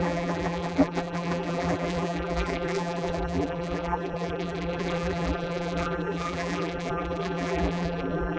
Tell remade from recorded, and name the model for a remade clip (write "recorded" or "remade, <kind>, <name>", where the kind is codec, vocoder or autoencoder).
remade, vocoder, BigVGAN v2